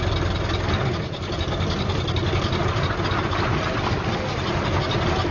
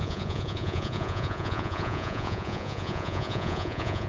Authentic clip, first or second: first